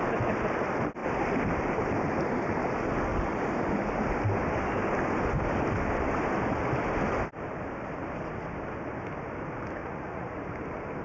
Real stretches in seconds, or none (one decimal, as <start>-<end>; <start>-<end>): 0.0-9.8; 10.4-11.0